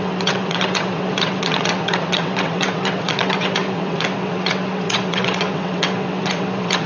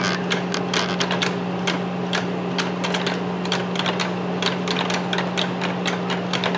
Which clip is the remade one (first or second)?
first